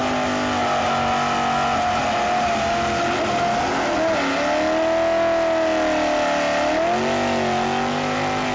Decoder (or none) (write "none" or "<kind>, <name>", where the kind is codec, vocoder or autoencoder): none